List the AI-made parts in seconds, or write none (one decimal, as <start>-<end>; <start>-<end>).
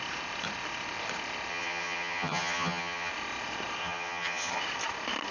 1.5-3.1; 3.8-4.6